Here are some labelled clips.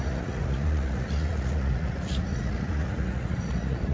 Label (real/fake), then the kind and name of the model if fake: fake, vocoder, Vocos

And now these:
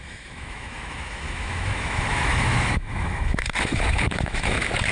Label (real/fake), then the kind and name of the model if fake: fake, autoencoder, DAC-VAE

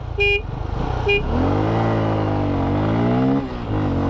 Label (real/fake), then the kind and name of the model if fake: real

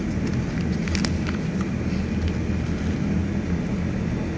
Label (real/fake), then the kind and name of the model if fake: real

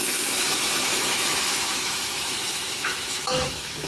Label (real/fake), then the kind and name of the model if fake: fake, autoencoder, DAC-VAE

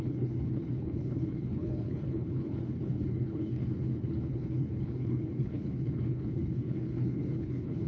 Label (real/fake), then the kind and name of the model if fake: fake, codec, HILCodec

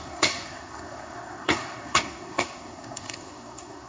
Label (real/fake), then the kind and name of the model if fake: fake, codec, SNAC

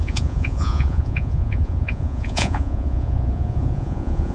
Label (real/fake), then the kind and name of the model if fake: fake, vocoder, Vocos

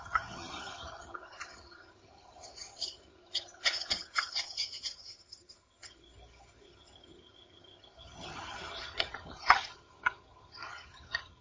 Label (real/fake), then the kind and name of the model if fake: fake, vocoder, HiFi-GAN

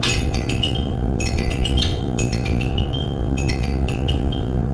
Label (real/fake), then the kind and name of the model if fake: fake, vocoder, WaveNeXt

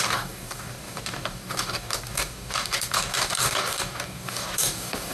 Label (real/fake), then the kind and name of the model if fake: fake, codec, DAC